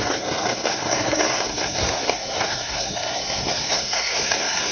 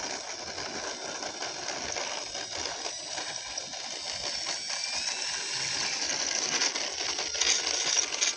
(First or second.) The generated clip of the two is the first